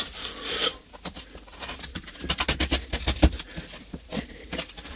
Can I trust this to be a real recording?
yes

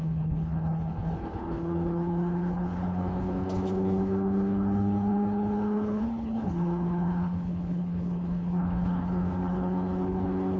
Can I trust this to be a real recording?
no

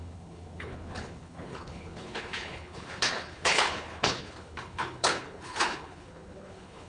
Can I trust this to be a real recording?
no